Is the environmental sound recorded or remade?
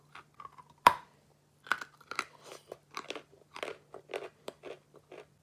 remade